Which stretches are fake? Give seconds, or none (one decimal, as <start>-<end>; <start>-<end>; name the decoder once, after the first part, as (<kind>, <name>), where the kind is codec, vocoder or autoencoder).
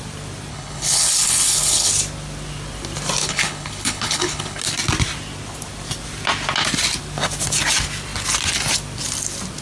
0.5-1.9 (codec, HILCodec); 3.2-4.6